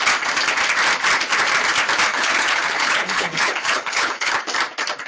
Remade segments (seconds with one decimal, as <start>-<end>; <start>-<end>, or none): 2.1-4.3

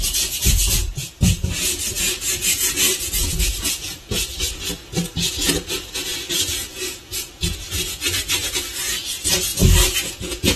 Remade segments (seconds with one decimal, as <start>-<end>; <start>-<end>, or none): 0.0-4.8; 5.3-9.5; 10.1-10.6

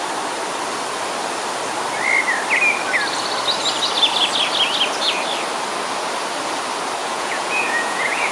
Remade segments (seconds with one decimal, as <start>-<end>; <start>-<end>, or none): 7.0-8.3

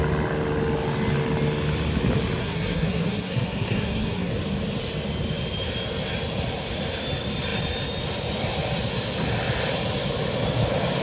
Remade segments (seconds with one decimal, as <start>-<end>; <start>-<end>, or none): 2.4-4.3

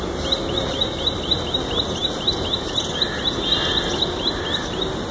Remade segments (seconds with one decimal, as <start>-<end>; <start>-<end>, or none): none

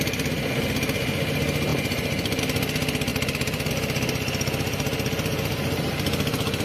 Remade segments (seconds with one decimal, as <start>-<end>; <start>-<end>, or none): 1.7-2.4

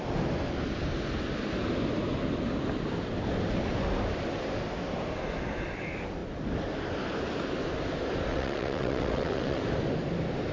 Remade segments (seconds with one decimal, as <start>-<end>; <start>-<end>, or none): 8.3-9.6